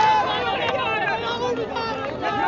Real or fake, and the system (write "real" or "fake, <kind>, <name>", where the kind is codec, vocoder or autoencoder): real